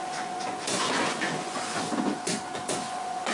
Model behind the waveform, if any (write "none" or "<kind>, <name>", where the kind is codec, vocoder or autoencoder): vocoder, Vocos